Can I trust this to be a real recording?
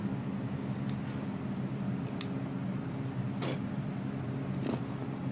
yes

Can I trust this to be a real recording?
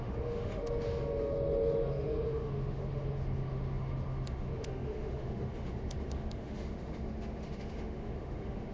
no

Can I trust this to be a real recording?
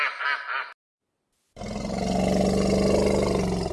yes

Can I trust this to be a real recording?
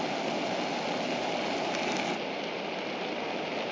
yes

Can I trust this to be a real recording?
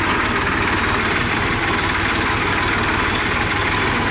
yes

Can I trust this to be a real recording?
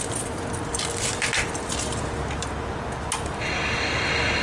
yes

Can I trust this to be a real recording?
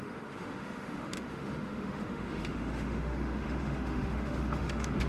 no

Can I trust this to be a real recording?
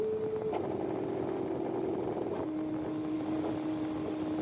yes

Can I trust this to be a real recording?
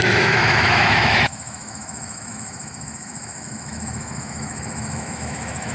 no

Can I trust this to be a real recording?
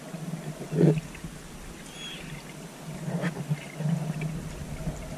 yes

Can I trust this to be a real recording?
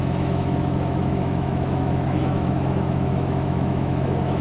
no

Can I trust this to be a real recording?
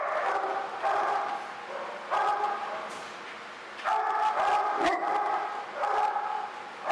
yes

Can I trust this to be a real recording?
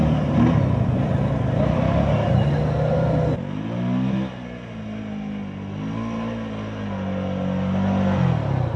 yes